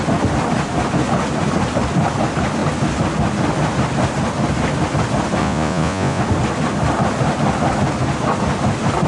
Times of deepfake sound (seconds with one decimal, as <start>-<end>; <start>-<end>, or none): 5.4-6.2